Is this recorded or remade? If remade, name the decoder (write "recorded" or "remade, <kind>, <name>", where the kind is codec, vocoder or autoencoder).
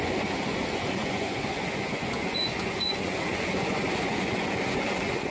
remade, vocoder, Vocos